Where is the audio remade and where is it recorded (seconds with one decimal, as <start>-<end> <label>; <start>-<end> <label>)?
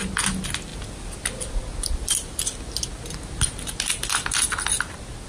0.0-5.3 recorded